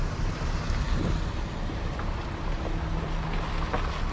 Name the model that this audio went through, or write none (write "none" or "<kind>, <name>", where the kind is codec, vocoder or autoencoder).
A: none